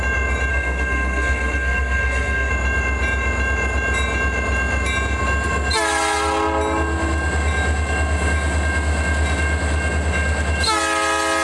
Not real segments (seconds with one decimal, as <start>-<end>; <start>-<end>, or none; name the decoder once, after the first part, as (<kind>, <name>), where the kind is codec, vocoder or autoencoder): 0.5-2.5 (codec, SNAC)